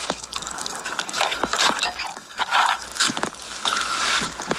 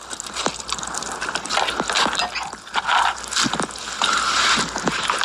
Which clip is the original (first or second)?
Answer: second